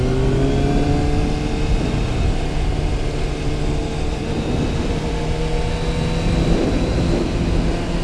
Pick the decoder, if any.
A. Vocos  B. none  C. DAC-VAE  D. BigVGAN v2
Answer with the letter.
B